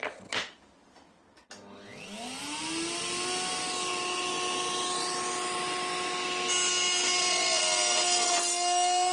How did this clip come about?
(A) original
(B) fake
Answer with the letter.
A